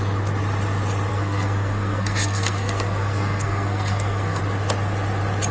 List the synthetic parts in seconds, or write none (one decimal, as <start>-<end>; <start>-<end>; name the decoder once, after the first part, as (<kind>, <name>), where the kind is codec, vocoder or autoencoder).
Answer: 1.1-4.4 (codec, SNAC)